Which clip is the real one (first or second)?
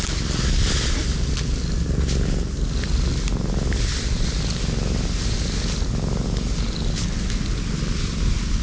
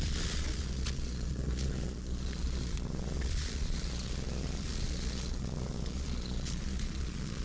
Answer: first